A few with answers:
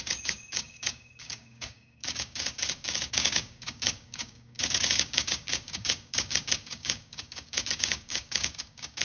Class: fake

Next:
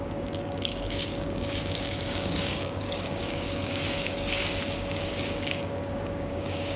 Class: fake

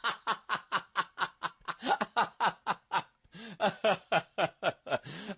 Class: real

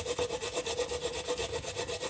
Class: real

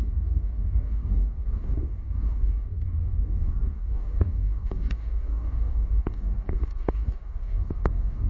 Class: fake